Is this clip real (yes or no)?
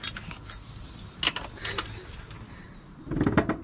yes